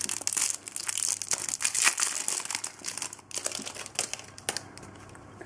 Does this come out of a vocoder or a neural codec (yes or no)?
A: no